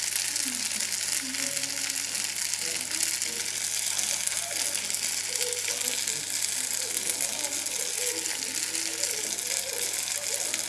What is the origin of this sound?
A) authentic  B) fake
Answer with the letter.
A